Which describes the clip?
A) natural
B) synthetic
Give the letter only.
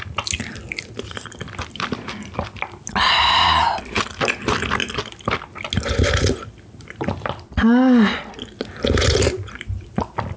A